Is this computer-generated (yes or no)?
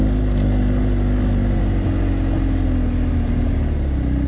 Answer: no